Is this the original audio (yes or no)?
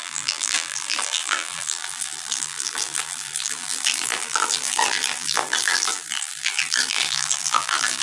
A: no